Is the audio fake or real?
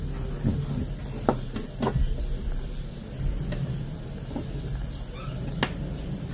real